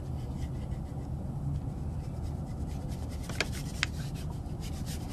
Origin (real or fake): real